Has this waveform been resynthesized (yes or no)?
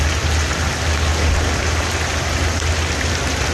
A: no